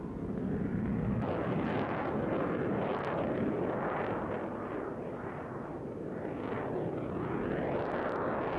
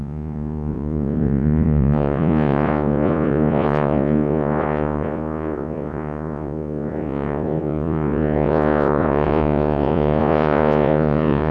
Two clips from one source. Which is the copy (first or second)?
second